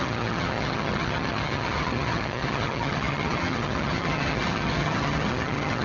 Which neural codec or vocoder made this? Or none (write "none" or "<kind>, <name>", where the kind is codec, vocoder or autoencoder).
vocoder, HiFi-GAN